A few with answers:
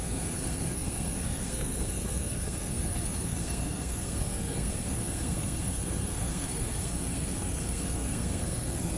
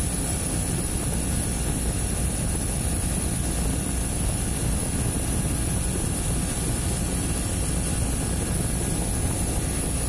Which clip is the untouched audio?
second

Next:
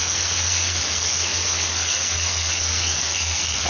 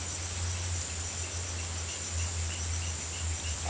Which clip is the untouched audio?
second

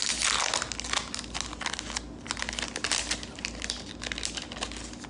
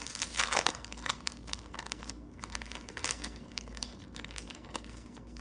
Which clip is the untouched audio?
first